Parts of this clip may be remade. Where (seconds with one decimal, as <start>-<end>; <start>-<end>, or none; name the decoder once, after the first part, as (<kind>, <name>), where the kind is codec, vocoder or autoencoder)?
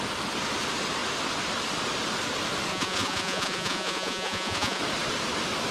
2.7-4.8 (vocoder, Vocos)